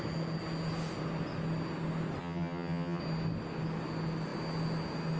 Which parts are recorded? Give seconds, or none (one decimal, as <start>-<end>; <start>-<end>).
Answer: 0.0-2.2; 3.0-5.2